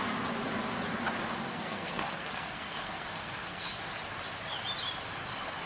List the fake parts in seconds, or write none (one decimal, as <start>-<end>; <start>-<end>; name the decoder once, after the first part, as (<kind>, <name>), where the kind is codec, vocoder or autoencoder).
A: 1.5-3.8 (codec, SNAC)